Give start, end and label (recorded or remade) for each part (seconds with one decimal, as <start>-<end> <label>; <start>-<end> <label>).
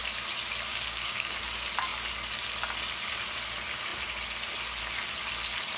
0.0-0.7 recorded; 0.7-1.4 remade; 1.4-5.8 recorded